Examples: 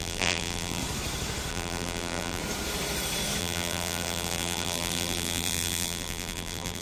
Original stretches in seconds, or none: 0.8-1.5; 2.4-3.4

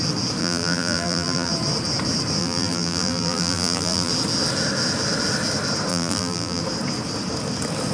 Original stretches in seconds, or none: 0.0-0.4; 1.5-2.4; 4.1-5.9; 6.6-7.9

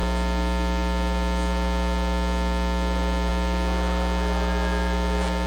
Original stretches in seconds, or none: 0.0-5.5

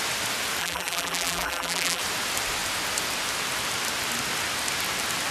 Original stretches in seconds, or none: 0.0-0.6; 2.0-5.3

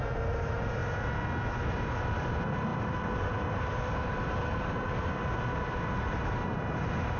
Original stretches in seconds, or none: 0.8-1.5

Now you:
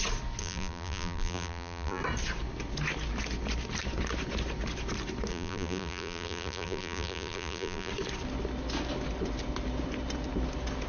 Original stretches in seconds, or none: 0.0-0.4; 2.0-5.3; 7.9-10.9

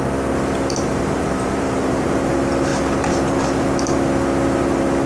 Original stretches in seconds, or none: 0.0-0.8; 2.3-5.1